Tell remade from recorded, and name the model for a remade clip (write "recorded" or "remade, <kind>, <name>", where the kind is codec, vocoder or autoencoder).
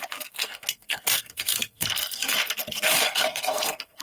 remade, codec, SNAC